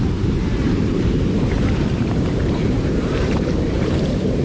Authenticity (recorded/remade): remade